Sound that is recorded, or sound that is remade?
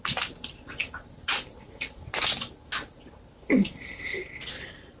recorded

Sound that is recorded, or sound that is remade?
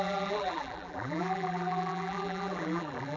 remade